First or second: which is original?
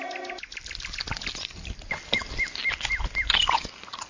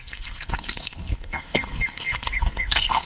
first